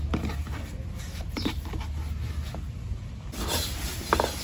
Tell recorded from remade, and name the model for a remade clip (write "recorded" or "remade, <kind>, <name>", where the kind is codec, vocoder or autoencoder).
recorded